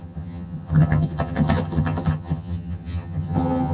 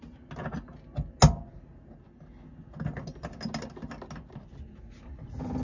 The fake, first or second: first